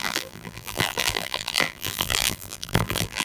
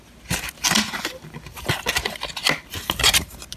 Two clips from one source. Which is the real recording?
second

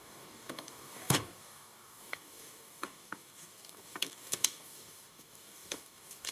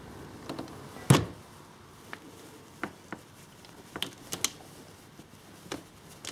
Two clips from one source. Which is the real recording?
second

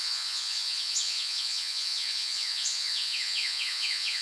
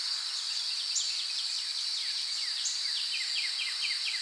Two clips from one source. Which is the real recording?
second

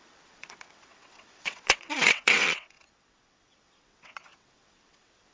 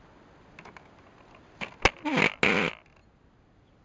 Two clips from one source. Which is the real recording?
second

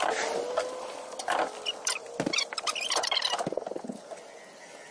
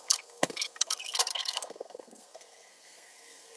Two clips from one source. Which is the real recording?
first